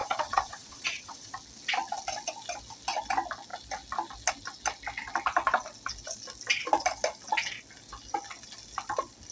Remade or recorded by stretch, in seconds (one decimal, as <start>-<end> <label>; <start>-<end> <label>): 0.0-1.3 remade; 1.3-9.3 recorded